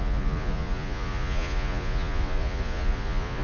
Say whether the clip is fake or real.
fake